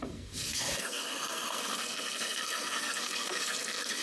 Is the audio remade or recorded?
remade